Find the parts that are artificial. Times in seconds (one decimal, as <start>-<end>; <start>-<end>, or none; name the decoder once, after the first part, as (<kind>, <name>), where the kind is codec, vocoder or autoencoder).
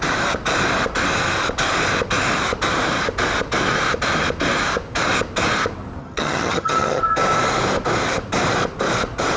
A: 6.0-7.0 (vocoder, HiFi-GAN)